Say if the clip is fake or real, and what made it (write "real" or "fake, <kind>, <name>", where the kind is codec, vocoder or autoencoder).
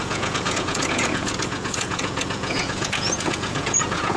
fake, vocoder, Vocos